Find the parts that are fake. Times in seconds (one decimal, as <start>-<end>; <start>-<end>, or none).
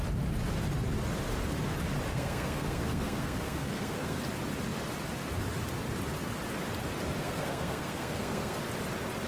2.1-4.2; 7.2-8.6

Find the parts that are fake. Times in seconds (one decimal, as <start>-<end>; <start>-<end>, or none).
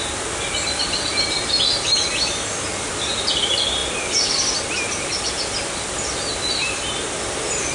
none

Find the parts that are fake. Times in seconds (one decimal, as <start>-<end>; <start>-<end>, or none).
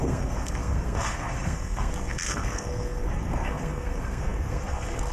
0.0-5.1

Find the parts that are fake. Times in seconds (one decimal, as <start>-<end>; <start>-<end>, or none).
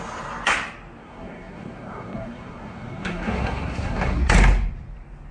1.0-4.2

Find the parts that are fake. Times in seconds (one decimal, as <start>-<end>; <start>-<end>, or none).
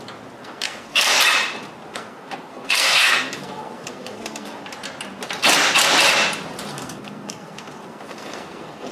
0.4-1.2; 1.9-4.6; 6.7-8.9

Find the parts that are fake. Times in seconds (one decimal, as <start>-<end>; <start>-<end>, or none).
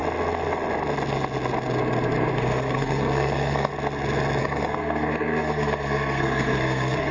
2.3-3.7; 4.4-7.1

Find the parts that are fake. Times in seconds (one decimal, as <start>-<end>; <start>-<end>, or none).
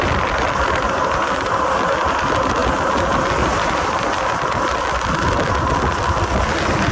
none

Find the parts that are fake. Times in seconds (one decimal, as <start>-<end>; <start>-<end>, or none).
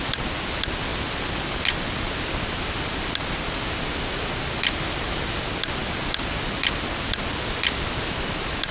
none